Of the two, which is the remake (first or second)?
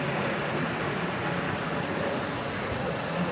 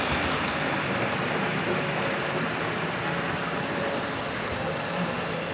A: first